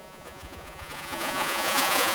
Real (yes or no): no